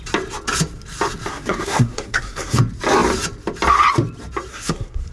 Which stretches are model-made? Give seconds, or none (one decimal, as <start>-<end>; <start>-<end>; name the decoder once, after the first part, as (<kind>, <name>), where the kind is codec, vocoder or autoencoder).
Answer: 1.3-2.6 (codec, SNAC); 4.5-5.1